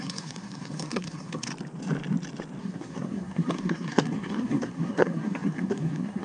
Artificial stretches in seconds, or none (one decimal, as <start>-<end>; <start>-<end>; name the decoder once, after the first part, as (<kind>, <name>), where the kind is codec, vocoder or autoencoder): 0.0-1.5 (codec, SNAC); 2.6-6.2